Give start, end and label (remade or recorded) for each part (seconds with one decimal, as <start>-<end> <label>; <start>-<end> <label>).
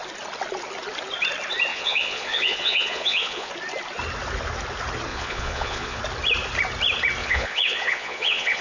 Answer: 0.0-1.7 recorded; 1.7-3.5 remade; 3.5-5.1 recorded; 5.1-6.0 remade; 6.0-7.2 recorded; 7.2-8.6 remade